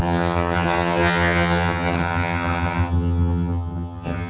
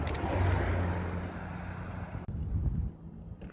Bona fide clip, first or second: second